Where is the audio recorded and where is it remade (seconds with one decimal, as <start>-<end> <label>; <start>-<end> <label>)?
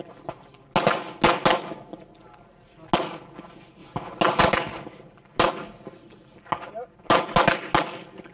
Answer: 0.0-8.3 recorded